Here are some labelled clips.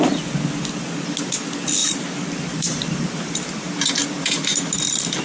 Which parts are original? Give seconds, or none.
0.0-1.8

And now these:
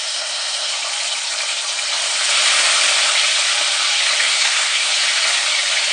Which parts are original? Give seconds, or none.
0.7-4.2; 4.9-5.9

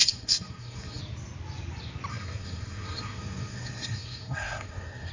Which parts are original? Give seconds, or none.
1.0-2.1